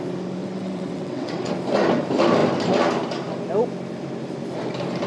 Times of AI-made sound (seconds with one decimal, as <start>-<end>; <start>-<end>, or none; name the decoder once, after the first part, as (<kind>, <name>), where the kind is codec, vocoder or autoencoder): 0.4-1.5 (vocoder, WaveNeXt)